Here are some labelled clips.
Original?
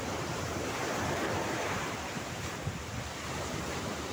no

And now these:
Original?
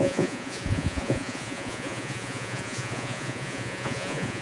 no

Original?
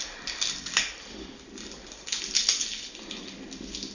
yes